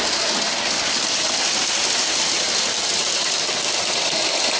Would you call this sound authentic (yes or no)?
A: yes